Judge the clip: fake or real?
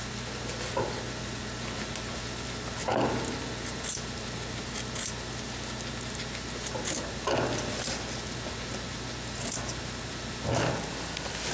real